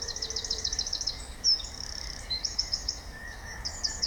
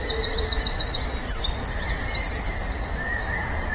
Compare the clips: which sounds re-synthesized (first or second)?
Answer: first